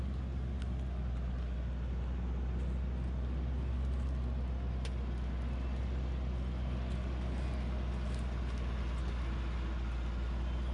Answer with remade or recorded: recorded